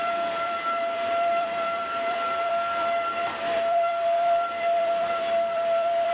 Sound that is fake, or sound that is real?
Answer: fake